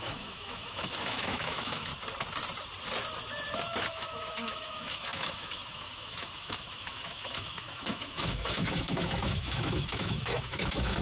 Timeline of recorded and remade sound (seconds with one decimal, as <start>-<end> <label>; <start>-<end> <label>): 0.0-1.9 remade; 1.9-3.9 recorded; 3.9-11.0 remade